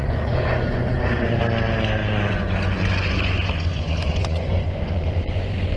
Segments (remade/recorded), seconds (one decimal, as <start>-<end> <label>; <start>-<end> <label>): 0.0-1.4 remade; 1.4-2.0 recorded; 2.0-5.8 remade